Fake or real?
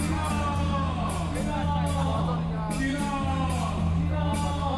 real